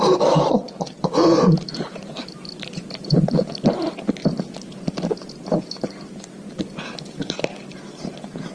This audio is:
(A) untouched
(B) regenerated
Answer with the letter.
B